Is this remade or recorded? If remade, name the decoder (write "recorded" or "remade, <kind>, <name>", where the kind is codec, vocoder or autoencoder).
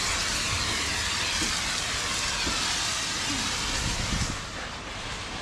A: recorded